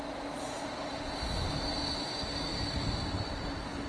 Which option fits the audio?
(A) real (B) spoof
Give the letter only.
A